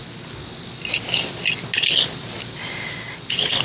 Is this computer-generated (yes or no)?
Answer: no